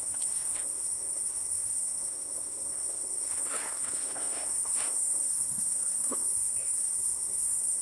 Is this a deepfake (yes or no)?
yes